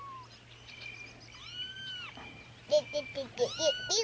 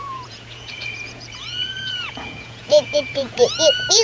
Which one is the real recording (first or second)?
first